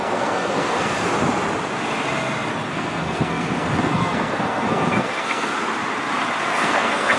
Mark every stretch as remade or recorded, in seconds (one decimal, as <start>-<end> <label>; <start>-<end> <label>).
0.0-1.1 remade; 1.1-2.7 recorded; 2.7-5.5 remade; 5.5-6.4 recorded; 6.4-7.2 remade